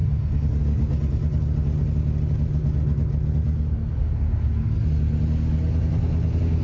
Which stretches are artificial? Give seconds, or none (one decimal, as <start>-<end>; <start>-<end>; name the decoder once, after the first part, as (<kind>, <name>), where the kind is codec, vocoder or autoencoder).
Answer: none